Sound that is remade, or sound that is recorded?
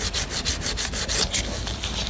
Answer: recorded